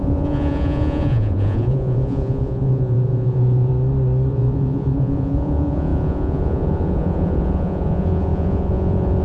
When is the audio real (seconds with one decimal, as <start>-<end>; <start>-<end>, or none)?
3.7-4.3